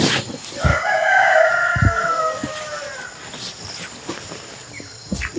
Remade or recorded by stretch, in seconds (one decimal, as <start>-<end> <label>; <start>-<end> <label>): 0.0-0.7 recorded; 0.7-1.5 remade; 1.5-5.4 recorded